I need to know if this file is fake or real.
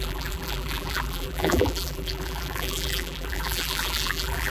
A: fake